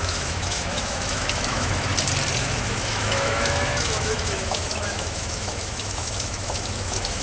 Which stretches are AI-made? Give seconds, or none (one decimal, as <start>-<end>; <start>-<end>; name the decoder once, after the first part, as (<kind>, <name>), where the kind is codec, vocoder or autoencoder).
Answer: 0.0-1.9 (autoencoder, DAC-VAE); 2.4-7.2